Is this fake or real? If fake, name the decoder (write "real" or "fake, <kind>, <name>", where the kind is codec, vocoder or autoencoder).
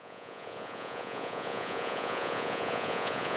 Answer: fake, vocoder, Vocos